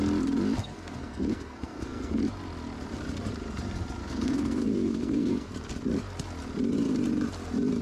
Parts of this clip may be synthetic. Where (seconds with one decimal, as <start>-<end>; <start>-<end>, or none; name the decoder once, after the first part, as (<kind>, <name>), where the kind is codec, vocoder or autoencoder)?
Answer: 0.6-2.2 (codec, SNAC); 4.0-5.5

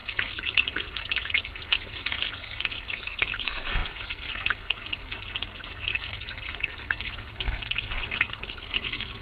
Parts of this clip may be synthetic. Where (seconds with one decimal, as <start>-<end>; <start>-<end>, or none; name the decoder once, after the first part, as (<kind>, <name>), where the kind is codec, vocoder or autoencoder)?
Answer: 0.0-9.2 (codec, SNAC)

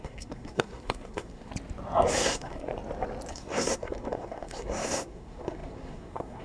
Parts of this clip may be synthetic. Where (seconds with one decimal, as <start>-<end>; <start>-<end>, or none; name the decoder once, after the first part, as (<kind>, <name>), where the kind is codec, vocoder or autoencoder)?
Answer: 0.0-1.5 (codec, SNAC); 2.1-2.7; 3.3-6.4

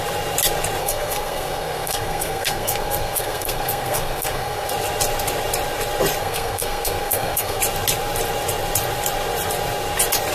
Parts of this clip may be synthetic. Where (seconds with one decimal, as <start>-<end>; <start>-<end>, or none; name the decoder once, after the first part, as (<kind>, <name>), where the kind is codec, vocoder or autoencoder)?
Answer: 0.8-4.7 (codec, SNAC); 6.2-7.6

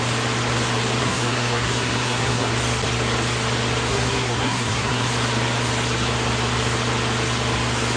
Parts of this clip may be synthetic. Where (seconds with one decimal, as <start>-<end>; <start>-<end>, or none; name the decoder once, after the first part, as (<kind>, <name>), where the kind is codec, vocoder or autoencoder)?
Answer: 1.0-2.5 (codec, SNAC); 3.9-5.1

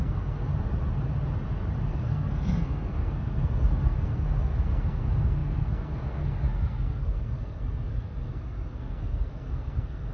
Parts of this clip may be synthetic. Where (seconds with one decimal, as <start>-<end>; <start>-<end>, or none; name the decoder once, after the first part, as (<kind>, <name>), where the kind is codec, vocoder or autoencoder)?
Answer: 0.0-0.5 (codec, SNAC); 1.9-10.1

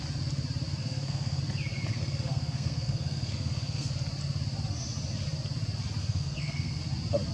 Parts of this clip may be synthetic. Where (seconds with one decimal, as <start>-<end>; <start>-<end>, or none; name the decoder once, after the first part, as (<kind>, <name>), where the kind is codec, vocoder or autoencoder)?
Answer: 0.8-1.4 (codec, SNAC); 1.9-3.9; 6.0-6.8